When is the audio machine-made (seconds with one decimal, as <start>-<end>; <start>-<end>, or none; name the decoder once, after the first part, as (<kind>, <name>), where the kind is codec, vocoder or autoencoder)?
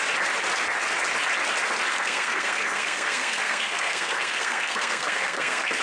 1.9-5.8 (codec, SNAC)